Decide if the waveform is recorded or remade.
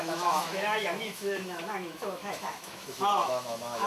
remade